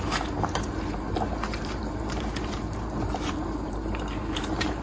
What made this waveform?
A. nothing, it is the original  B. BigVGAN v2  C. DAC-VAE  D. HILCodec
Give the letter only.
B